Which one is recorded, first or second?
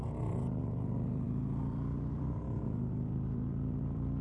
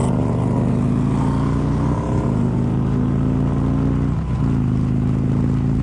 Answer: second